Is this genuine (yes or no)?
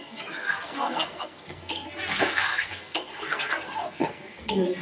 no